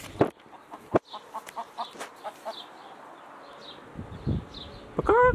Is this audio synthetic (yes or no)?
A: no